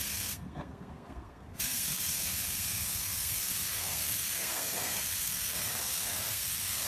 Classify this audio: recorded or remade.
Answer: remade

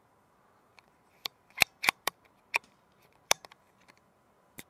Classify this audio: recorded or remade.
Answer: remade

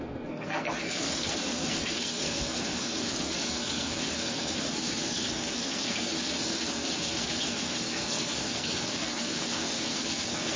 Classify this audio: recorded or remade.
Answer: remade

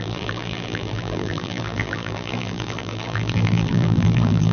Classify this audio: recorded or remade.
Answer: remade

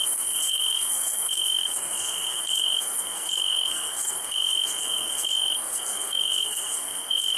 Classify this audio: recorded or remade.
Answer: remade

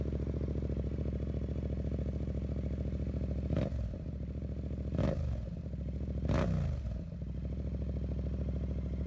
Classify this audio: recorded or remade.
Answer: recorded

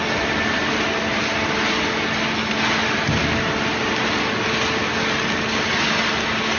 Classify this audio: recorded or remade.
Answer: recorded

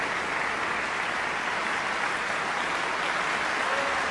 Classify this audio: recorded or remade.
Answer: recorded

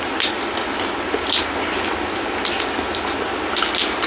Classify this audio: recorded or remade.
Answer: recorded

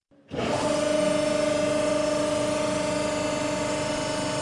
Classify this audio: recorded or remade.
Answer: remade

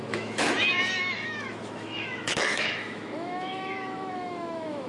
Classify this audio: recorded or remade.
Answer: remade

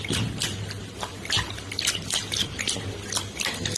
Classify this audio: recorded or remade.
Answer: recorded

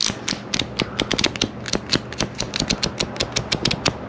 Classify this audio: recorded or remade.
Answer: recorded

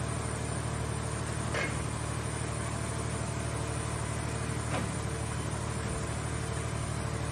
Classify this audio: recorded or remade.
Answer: recorded